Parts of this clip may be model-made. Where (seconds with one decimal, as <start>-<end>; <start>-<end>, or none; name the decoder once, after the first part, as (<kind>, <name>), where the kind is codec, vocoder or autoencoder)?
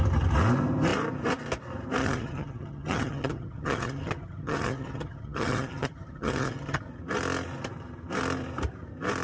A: 2.0-6.8 (vocoder, HiFi-GAN)